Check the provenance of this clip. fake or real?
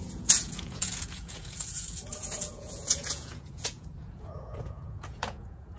fake